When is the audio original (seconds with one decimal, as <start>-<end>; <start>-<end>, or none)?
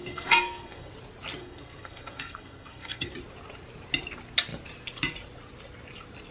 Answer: 0.9-1.4; 3.1-6.3